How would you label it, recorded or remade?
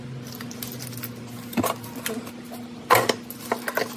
recorded